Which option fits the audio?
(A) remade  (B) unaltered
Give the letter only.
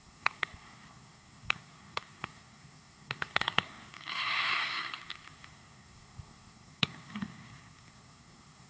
A